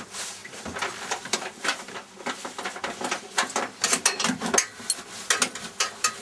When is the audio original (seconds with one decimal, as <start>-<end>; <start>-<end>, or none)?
0.0-0.4; 2.3-6.2